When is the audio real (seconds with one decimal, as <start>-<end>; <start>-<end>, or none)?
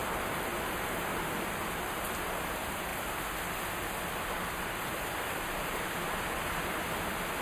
0.0-7.4